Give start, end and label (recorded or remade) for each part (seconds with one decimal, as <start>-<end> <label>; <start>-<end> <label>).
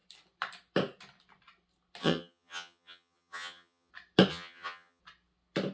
0.0-2.0 recorded; 2.0-3.9 remade; 3.9-4.3 recorded; 4.3-5.0 remade; 5.0-5.7 recorded